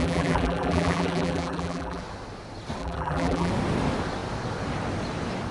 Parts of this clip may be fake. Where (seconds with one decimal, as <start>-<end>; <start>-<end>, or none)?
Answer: 0.0-2.0; 2.8-3.5